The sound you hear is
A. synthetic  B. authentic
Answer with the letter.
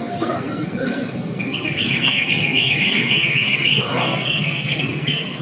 A